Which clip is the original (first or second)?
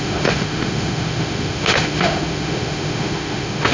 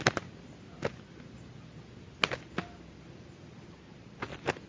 second